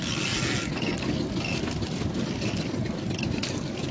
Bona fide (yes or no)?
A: yes